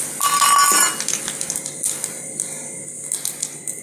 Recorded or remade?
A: recorded